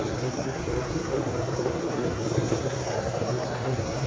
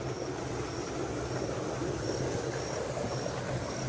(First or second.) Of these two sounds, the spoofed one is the first